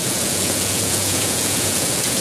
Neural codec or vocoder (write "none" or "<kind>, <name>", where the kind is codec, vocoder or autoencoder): vocoder, Vocos